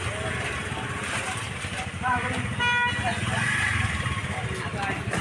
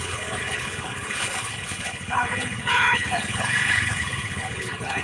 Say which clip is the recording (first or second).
first